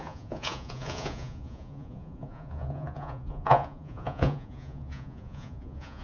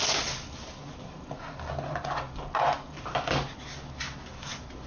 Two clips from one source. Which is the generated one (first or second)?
first